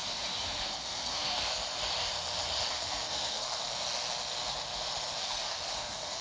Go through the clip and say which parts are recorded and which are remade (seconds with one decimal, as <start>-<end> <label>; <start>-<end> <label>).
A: 0.0-0.6 recorded; 0.6-1.6 remade; 1.6-2.7 recorded; 2.7-3.6 remade; 3.6-5.2 recorded; 5.2-6.2 remade